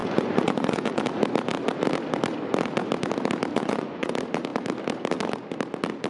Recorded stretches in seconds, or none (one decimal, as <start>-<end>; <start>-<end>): 1.0-3.5; 4.1-6.1